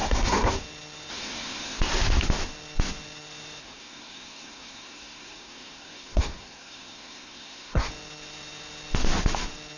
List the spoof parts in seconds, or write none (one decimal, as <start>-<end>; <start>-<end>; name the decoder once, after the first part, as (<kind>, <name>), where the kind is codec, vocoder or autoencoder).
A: 0.0-0.5 (codec, SNAC); 1.1-1.8; 3.6-7.9

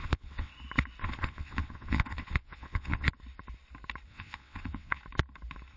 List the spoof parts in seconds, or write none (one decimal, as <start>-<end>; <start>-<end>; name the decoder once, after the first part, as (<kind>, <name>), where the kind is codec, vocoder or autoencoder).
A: 0.0-0.5 (vocoder, WaveNeXt); 1.0-3.1; 4.1-5.0

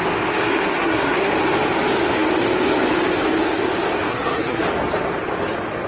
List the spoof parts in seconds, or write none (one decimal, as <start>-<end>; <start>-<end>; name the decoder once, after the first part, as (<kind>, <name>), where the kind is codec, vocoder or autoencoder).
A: 0.5-1.3 (codec, SNAC); 4.1-4.6

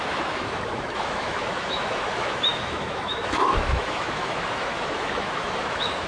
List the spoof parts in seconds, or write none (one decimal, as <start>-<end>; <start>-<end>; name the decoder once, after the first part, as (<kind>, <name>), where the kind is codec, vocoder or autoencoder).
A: 0.0-6.1 (autoencoder, DAC-VAE)

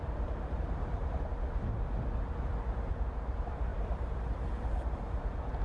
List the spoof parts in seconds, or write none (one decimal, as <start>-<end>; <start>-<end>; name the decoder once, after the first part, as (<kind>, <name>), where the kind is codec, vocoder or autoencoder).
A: 0.0-1.3 (vocoder, BigVGAN v2); 3.3-5.6

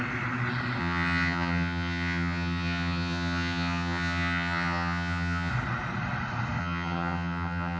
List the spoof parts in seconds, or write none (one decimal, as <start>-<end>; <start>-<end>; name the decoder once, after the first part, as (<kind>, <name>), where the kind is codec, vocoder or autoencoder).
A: 0.8-5.5 (vocoder, HiFi-GAN); 6.6-7.8